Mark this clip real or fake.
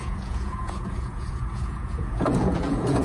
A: fake